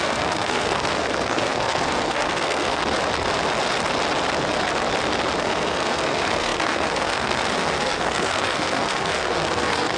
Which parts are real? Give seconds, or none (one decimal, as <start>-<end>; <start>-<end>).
2.8-5.4